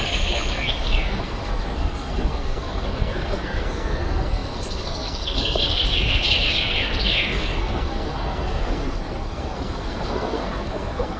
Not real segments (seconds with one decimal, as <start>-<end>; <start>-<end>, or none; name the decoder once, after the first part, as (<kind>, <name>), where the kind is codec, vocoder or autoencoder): 0.0-11.2 (codec, SNAC)